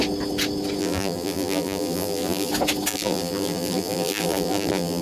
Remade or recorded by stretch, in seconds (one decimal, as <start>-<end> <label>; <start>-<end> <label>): 0.0-0.8 recorded; 0.8-2.5 remade; 2.5-2.9 recorded; 2.9-5.0 remade